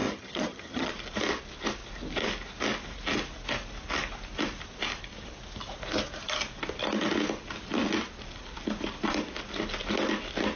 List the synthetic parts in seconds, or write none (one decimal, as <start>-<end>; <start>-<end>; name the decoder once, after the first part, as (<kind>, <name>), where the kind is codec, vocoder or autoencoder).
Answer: 0.0-0.9 (vocoder, HiFi-GAN)